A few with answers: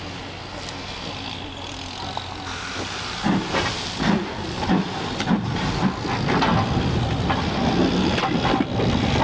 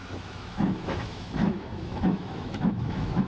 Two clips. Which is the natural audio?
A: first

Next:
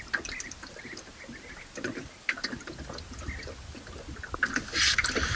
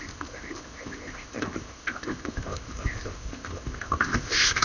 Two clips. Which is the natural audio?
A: first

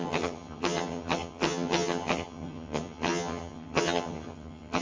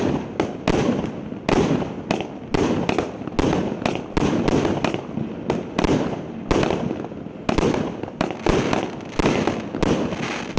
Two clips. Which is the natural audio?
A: second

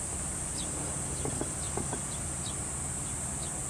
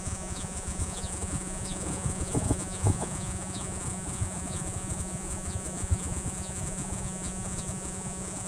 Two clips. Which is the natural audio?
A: first